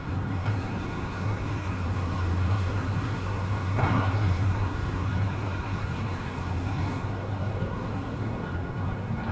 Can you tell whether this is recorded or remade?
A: remade